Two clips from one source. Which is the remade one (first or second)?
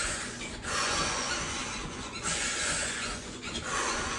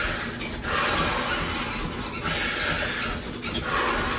first